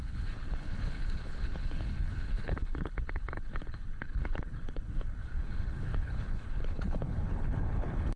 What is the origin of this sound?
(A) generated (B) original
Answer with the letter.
A